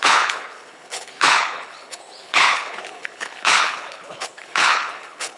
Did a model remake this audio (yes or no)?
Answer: yes